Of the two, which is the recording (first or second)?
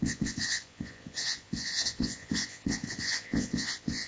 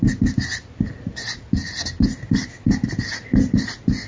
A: second